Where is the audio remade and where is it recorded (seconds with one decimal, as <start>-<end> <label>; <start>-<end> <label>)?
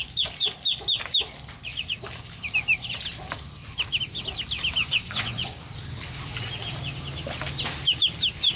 0.0-4.8 recorded; 4.8-5.6 remade; 5.6-8.6 recorded